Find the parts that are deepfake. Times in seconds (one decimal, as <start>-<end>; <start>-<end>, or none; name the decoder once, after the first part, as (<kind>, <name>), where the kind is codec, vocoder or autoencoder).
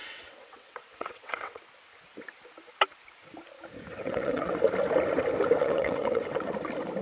0.0-1.6 (vocoder, WaveNeXt); 3.9-4.5; 5.6-6.5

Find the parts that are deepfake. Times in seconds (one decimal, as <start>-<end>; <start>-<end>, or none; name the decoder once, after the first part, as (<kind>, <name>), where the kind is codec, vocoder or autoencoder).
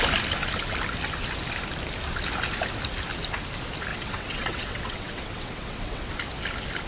3.9-6.1 (vocoder, WaveNeXt)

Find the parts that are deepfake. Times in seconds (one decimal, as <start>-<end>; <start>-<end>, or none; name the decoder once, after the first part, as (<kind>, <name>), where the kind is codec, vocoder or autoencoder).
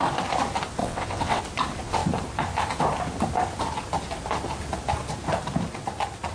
0.8-1.4 (vocoder, WaveNeXt)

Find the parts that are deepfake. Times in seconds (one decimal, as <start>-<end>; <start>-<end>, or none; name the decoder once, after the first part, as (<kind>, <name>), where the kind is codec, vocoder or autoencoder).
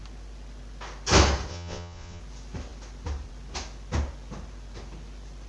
1.5-2.2 (vocoder, WaveNeXt)